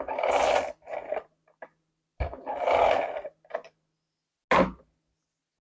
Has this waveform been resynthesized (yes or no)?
no